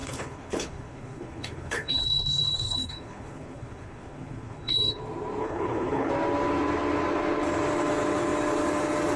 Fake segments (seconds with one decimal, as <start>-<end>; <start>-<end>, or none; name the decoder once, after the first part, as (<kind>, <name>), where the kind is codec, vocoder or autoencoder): 0.0-5.0 (codec, HILCodec); 5.4-6.1